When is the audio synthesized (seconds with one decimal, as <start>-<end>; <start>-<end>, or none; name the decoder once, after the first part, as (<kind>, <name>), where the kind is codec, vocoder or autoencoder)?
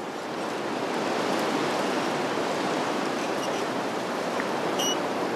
0.0-0.8 (vocoder, BigVGAN v2); 1.6-4.8